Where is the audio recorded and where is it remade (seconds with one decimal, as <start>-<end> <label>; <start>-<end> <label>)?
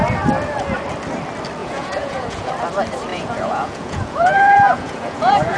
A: 0.0-1.6 recorded; 1.6-2.5 remade; 2.5-3.1 recorded; 3.1-5.6 remade